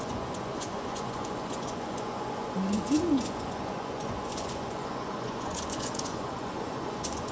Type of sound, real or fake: fake